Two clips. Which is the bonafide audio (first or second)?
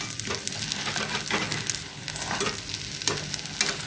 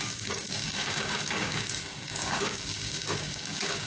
first